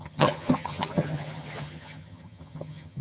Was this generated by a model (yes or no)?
yes